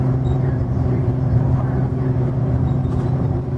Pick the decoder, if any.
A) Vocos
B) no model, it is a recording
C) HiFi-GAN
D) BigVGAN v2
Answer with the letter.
D